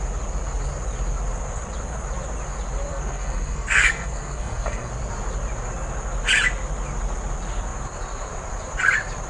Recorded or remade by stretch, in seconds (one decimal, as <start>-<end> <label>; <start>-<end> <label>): 0.0-2.9 recorded; 2.9-4.9 remade; 4.9-9.3 recorded